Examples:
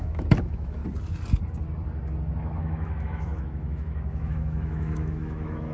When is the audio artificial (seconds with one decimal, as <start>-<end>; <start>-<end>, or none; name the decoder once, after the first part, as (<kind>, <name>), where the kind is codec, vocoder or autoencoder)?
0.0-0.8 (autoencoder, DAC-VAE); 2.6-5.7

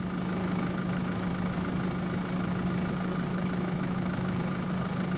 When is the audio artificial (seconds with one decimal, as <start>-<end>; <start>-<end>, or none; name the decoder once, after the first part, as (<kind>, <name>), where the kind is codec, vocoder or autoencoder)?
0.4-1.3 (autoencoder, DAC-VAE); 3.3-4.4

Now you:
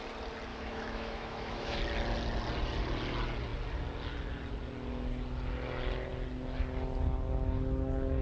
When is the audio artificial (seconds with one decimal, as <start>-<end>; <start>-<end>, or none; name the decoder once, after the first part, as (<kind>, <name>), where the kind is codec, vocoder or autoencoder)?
0.5-1.8 (autoencoder, DAC-VAE)